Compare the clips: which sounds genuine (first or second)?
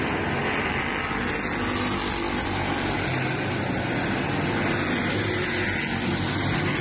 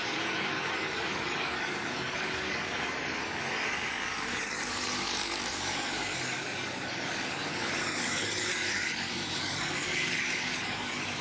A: first